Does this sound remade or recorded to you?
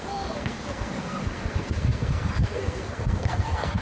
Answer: remade